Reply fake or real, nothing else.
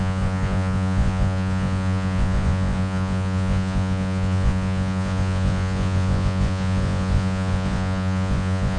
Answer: fake